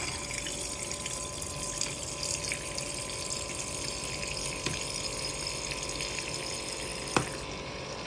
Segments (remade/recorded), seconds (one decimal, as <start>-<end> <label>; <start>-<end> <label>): 0.0-8.1 recorded